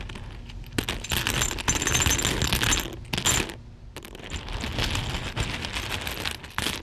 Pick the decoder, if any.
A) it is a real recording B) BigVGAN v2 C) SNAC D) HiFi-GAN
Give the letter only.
A